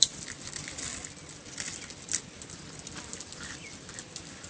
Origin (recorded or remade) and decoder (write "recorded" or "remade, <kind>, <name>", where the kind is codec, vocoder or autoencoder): recorded